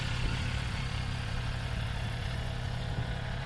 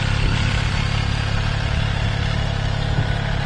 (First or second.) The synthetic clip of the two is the first